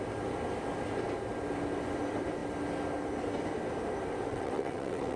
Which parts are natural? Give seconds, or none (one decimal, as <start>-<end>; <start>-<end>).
0.0-4.3